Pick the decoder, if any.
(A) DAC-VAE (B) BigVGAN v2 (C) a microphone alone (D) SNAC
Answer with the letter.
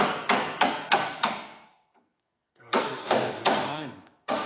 D